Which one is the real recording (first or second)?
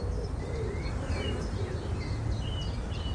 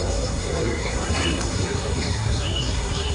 first